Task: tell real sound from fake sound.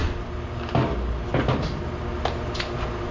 real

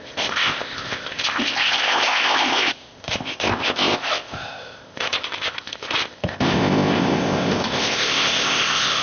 fake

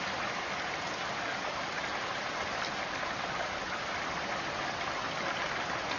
real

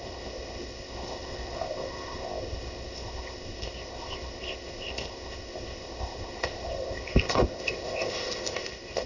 fake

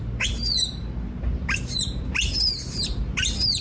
real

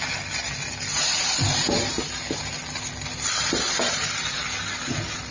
real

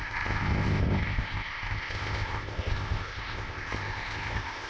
fake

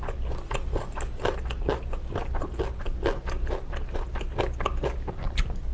real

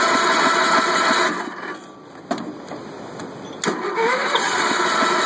real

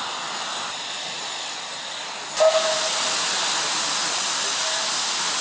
real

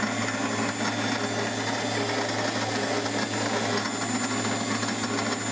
real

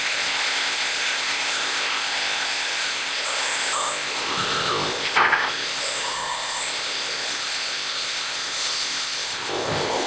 fake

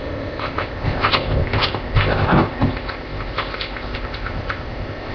fake